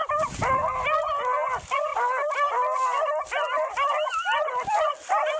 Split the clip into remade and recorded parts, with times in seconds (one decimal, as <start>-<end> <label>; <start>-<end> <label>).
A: 0.0-5.4 recorded